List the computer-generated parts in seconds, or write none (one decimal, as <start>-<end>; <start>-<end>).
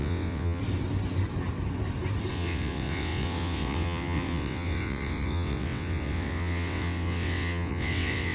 0.0-0.6; 2.3-8.3